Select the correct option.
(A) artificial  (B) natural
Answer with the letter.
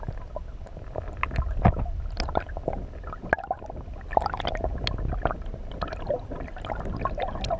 B